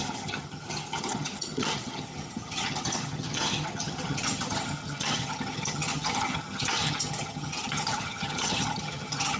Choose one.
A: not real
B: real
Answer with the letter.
A